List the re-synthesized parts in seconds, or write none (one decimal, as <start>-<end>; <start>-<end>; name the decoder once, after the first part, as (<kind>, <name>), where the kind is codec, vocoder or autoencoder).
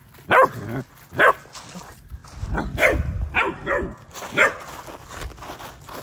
none